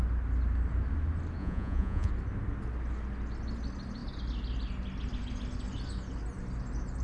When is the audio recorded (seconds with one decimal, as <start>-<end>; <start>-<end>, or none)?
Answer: 0.0-1.4; 2.1-7.0

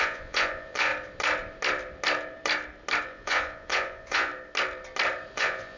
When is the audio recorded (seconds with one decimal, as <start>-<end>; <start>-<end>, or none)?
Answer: 0.9-3.0; 4.3-5.3

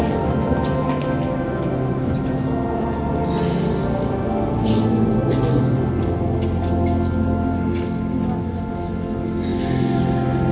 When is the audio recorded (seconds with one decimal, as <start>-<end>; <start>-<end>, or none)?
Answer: 0.0-10.5

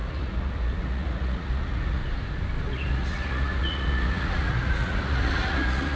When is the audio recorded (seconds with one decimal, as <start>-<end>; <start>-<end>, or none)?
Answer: 2.0-2.6